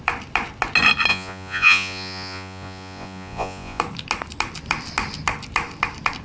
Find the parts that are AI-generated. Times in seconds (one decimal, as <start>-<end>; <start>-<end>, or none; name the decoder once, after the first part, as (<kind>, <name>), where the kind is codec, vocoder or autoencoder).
1.1-3.8 (vocoder, Vocos)